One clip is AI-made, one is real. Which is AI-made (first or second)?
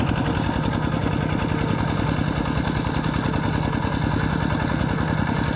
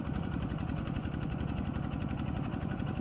second